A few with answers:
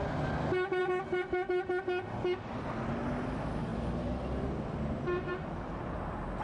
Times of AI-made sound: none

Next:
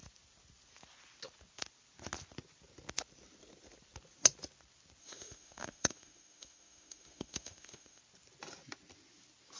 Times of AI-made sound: 5.0-8.0 (autoencoder, DAC-VAE)

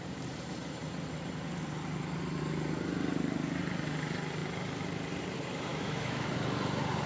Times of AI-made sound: 5.7-6.3 (autoencoder, DAC-VAE)

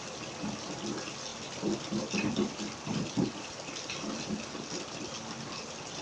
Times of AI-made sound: none